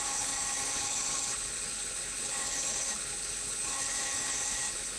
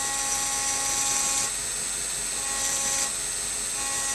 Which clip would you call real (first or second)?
second